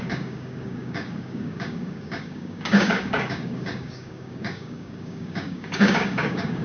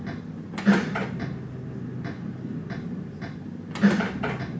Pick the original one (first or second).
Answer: second